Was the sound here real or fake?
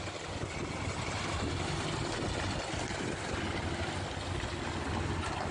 real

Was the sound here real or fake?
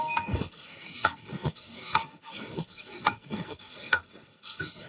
fake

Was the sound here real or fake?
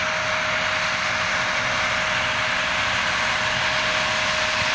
real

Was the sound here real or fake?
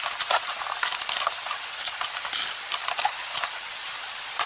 real